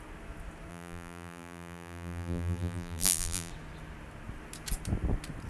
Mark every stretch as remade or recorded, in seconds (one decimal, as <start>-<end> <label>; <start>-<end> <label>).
0.0-0.7 recorded; 0.7-3.5 remade; 3.5-5.5 recorded

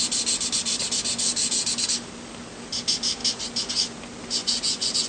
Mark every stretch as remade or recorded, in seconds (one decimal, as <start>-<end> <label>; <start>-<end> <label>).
0.0-4.4 recorded; 4.4-5.1 remade

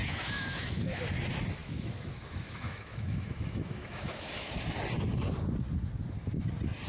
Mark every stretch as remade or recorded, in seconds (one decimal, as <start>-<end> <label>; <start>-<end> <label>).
0.0-1.0 remade; 1.0-1.6 recorded; 1.6-4.5 remade; 4.5-6.9 recorded

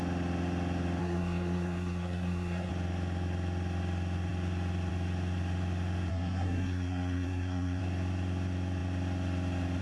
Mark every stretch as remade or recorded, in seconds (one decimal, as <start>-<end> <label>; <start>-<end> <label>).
0.0-1.0 recorded; 1.0-2.7 remade; 2.7-6.1 recorded; 6.1-7.8 remade; 7.8-9.8 recorded

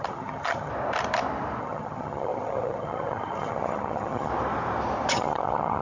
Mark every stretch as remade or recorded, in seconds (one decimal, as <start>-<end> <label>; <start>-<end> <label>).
0.0-0.7 remade; 0.7-1.6 recorded; 1.6-4.3 remade; 4.3-5.1 recorded; 5.1-5.8 remade

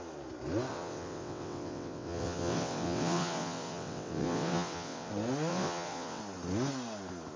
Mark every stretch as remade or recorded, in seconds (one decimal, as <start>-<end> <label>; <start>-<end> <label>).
0.0-0.7 recorded; 0.7-5.1 remade; 5.1-5.5 recorded; 5.5-6.2 remade; 6.2-7.4 recorded

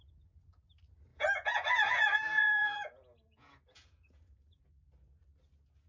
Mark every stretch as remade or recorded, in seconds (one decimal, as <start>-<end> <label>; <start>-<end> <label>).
0.0-1.1 recorded; 1.1-4.6 remade; 4.6-5.9 recorded